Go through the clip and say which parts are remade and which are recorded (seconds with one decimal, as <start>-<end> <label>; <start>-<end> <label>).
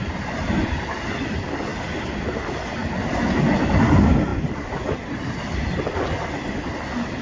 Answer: 0.0-7.2 recorded